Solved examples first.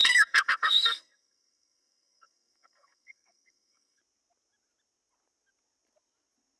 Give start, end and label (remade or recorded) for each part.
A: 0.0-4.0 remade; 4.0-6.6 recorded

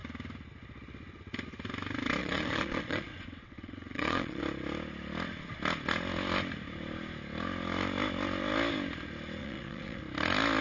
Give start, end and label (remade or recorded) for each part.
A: 0.0-2.2 recorded; 2.2-4.4 remade; 4.4-9.4 recorded; 9.4-10.0 remade; 10.0-10.6 recorded

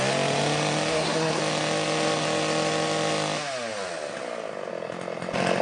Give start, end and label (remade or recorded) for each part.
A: 0.0-0.9 recorded; 0.9-1.4 remade; 1.4-5.6 recorded

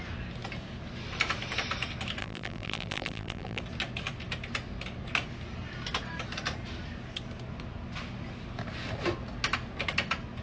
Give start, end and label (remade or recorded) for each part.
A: 0.0-2.2 recorded; 2.2-3.6 remade; 3.6-10.4 recorded

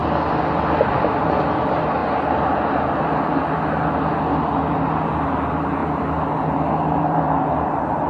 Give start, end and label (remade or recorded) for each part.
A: 0.0-0.8 recorded; 0.8-2.0 remade; 2.0-5.0 recorded; 5.0-5.8 remade; 5.8-7.0 recorded; 7.0-8.1 remade

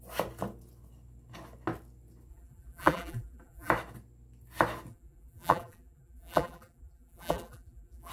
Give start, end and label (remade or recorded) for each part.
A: 0.0-2.3 recorded; 2.3-3.7 remade; 3.7-4.9 recorded; 4.9-8.1 remade

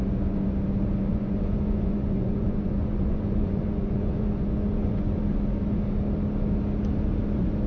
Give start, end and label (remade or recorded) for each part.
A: 0.0-1.1 recorded; 1.1-5.2 remade; 5.2-7.7 recorded

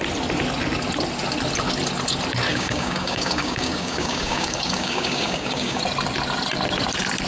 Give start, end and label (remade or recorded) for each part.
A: 0.0-2.5 recorded; 2.5-5.8 remade; 5.8-7.3 recorded